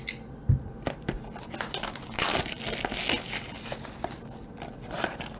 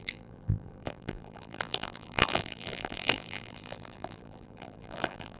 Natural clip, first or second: first